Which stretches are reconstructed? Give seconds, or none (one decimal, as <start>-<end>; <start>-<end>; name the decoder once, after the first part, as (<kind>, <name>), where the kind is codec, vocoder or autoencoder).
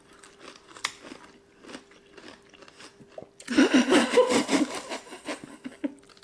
none